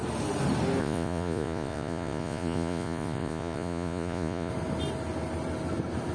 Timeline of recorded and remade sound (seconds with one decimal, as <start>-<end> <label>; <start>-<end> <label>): 0.0-0.8 recorded; 0.8-4.5 remade; 4.5-6.1 recorded